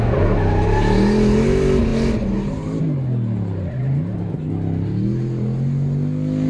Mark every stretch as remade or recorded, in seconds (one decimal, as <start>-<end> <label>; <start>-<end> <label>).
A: 0.0-6.5 recorded